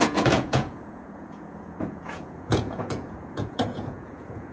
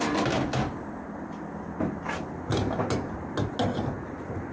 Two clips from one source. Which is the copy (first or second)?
first